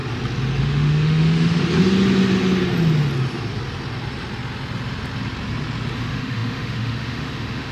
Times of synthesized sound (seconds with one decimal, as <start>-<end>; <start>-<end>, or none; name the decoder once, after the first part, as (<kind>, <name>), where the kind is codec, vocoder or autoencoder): 0.6-1.6 (autoencoder, DAC-VAE); 5.9-7.7